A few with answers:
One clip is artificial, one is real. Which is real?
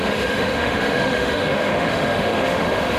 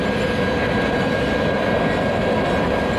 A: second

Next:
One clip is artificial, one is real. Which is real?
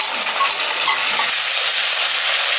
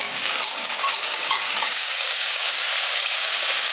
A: first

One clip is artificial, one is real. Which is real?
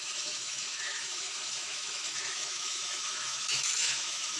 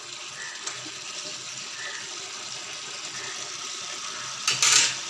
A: second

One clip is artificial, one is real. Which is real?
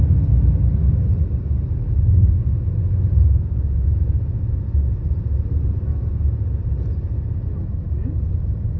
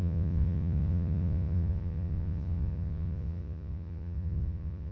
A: first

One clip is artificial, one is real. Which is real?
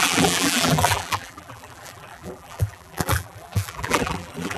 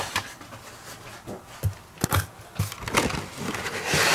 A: second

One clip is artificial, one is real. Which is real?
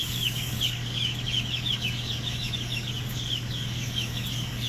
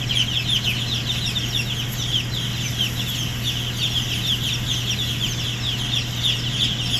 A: second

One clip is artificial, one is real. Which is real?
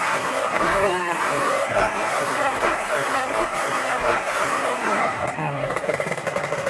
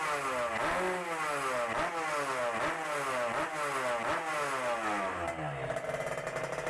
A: second